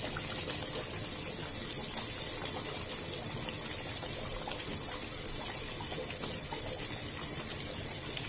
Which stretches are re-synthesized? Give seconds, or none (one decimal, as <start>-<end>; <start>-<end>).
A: none